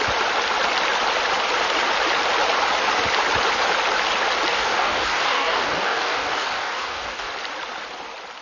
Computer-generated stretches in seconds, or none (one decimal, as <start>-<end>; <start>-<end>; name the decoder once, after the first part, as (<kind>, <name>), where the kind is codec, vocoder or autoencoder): 4.5-7.3 (codec, DAC)